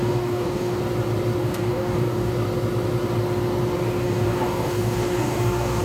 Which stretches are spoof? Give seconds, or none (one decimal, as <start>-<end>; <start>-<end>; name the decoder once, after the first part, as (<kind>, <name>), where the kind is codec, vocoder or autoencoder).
0.0-0.8 (codec, DAC); 1.4-2.3; 4.0-5.8